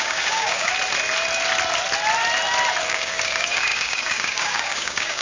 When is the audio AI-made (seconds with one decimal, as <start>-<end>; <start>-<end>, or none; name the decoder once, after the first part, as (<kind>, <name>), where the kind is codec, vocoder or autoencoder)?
0.0-0.7 (codec, DAC); 2.8-5.2